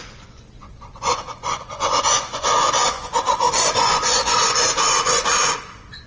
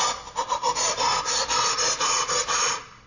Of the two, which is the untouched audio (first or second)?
second